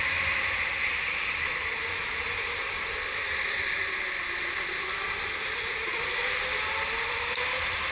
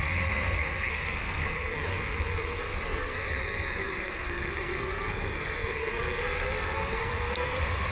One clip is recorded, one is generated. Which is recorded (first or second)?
first